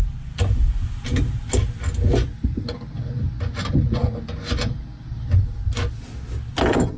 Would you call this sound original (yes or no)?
yes